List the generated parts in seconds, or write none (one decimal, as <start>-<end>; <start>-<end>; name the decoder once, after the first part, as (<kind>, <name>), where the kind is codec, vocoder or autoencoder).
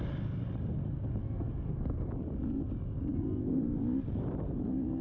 1.2-2.1 (codec, SNAC); 3.1-3.8